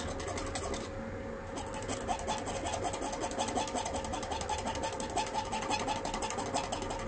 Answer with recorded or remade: recorded